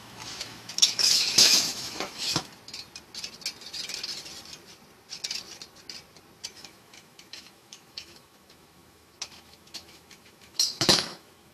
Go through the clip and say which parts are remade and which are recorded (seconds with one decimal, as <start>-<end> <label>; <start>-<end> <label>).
0.0-2.5 remade; 2.5-6.5 recorded; 6.5-11.5 remade